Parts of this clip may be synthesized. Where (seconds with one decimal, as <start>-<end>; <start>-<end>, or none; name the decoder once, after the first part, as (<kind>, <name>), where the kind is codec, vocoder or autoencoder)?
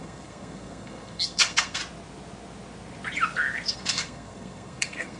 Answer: 0.0-1.8 (codec, SNAC); 3.7-5.2